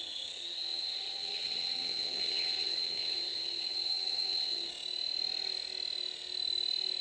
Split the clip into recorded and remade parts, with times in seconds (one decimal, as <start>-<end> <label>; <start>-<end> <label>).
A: 0.0-4.7 remade; 4.7-7.0 recorded